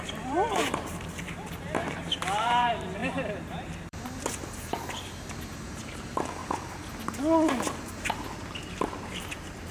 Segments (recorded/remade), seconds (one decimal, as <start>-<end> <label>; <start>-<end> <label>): 0.0-6.4 remade; 6.4-7.8 recorded; 7.8-9.7 remade